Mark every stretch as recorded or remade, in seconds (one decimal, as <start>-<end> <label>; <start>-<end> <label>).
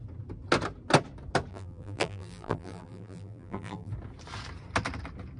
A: 0.0-1.5 recorded; 1.5-3.9 remade; 3.9-5.4 recorded